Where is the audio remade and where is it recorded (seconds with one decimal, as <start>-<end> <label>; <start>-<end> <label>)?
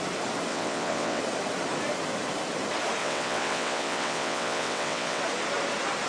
0.0-0.5 recorded; 0.5-1.2 remade; 1.2-3.0 recorded; 3.0-5.2 remade; 5.2-6.1 recorded